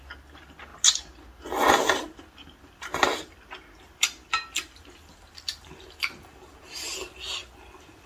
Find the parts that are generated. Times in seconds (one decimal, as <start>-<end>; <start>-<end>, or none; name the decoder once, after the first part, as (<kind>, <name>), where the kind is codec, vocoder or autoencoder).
none